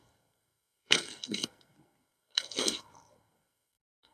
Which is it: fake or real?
fake